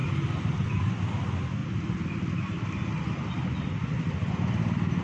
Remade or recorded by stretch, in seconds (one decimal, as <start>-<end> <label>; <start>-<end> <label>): 0.0-1.6 recorded; 1.6-4.6 remade; 4.6-5.0 recorded

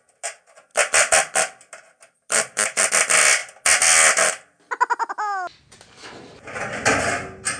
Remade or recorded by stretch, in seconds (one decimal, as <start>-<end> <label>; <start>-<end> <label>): 0.0-7.6 recorded

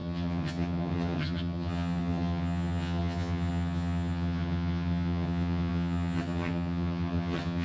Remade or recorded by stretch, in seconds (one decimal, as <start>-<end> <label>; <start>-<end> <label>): 0.0-7.6 remade

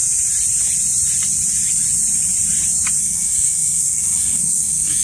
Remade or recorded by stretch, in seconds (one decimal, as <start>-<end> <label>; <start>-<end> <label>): 0.0-3.0 recorded; 3.0-5.0 remade

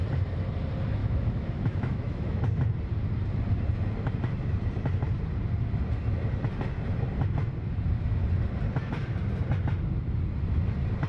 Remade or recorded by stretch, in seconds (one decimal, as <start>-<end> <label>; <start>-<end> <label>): 0.0-1.0 recorded; 1.0-2.4 remade; 2.4-11.1 recorded

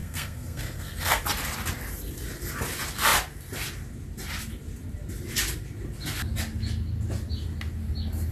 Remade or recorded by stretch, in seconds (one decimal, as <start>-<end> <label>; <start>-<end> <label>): 0.0-1.2 remade; 1.2-8.3 recorded

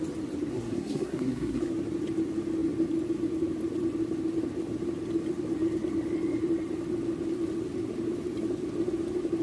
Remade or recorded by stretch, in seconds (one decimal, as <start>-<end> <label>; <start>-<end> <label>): 0.0-0.5 recorded; 0.5-1.7 remade; 1.7-9.4 recorded